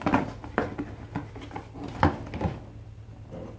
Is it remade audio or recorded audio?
recorded